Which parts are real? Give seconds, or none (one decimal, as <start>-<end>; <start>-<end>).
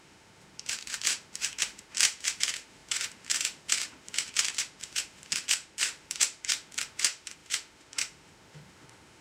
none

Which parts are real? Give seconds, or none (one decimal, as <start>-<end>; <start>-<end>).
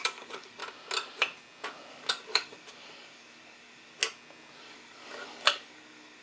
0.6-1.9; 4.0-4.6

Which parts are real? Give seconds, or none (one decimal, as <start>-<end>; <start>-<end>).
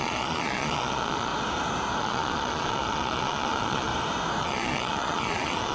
1.3-2.0; 3.9-4.4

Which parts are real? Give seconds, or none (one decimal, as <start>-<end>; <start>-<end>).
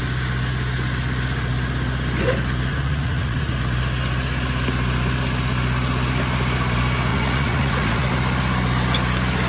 0.0-2.7; 3.5-7.1; 8.1-9.5